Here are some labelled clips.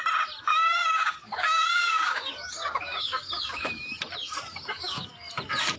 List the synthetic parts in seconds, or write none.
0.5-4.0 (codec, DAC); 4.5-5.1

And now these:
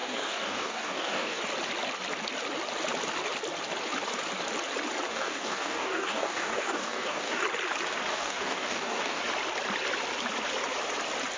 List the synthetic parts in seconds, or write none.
0.0-1.4 (codec, DAC); 5.1-7.4; 8.1-9.2

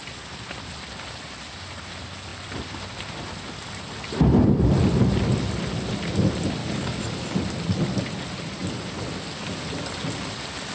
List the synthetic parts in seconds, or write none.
6.6-7.4 (codec, DAC)

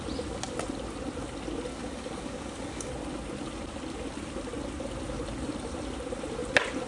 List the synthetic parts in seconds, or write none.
1.7-2.9 (codec, DAC)